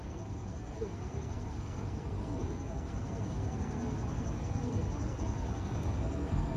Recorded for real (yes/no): no